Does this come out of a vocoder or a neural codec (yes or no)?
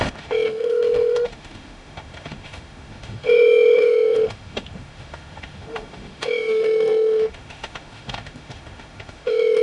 yes